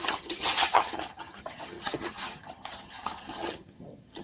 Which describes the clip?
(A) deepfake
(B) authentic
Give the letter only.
A